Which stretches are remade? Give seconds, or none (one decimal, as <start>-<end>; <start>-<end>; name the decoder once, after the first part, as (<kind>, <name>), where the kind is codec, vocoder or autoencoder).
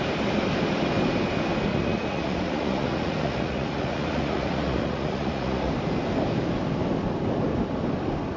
1.7-5.7 (vocoder, Vocos)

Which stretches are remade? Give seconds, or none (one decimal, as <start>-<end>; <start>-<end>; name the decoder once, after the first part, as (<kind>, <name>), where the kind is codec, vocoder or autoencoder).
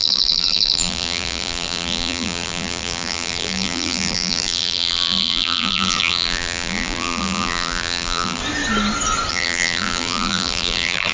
0.0-8.4 (vocoder, BigVGAN v2); 9.3-11.1